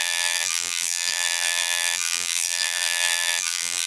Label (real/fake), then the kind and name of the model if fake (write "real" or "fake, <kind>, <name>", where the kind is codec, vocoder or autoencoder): fake, vocoder, BigVGAN v2